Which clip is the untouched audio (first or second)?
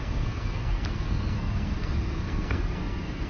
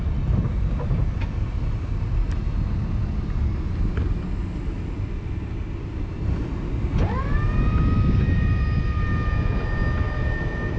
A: second